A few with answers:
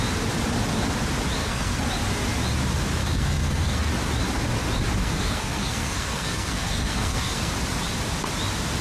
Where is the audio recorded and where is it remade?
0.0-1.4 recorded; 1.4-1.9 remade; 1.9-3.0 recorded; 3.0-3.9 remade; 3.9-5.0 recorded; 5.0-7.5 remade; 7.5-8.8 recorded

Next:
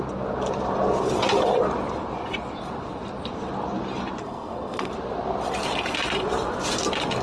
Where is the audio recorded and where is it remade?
0.0-4.2 recorded; 4.2-4.9 remade; 4.9-7.2 recorded

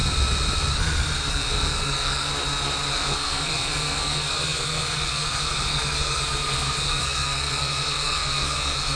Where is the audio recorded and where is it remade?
0.0-1.3 recorded; 1.3-2.3 remade; 2.3-2.9 recorded; 2.9-9.0 remade

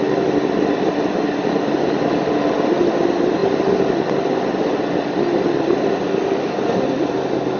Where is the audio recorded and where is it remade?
0.0-7.6 recorded